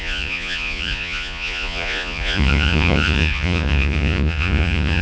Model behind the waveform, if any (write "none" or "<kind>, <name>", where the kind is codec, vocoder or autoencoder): vocoder, Vocos